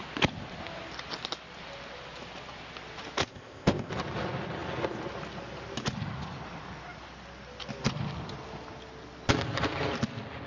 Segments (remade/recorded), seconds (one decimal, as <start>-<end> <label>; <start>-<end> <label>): 0.0-3.2 recorded; 3.2-3.9 remade; 3.9-10.5 recorded